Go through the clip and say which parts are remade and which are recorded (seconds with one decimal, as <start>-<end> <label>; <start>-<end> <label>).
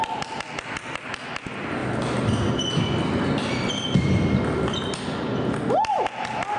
0.0-6.6 recorded